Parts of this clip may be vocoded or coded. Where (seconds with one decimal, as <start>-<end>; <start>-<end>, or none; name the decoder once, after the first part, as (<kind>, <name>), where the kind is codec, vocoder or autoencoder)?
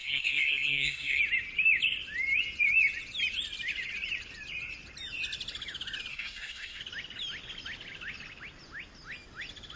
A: 0.0-1.2 (codec, SNAC); 6.1-6.8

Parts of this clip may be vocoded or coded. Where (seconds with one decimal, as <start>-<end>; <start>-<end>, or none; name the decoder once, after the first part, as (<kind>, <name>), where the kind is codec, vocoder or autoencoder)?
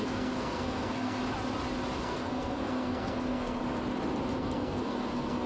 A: 0.0-1.2 (codec, SNAC); 2.0-3.6; 4.4-5.5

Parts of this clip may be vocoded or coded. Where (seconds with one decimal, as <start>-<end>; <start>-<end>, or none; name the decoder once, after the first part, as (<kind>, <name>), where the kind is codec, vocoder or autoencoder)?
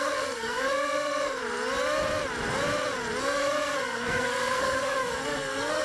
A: 0.0-1.4 (codec, SNAC); 3.2-5.8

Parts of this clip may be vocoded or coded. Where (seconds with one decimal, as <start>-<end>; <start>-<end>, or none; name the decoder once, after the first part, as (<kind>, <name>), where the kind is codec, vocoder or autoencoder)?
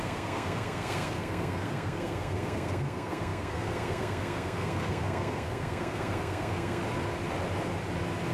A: 0.0-6.8 (codec, SNAC)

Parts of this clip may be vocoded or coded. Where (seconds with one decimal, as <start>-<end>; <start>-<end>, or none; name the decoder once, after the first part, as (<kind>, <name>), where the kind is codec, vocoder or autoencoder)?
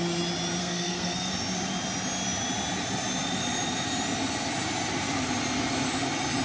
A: 0.6-1.3 (codec, SNAC)